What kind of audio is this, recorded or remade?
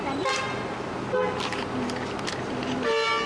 recorded